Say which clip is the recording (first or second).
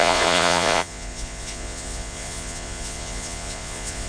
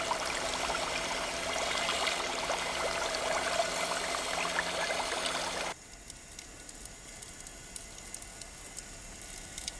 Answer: second